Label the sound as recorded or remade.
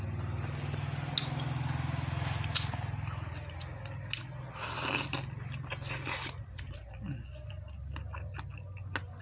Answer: recorded